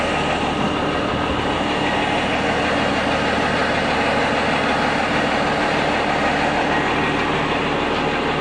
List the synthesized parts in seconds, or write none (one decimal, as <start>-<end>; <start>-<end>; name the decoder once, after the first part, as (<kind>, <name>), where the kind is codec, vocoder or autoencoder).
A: none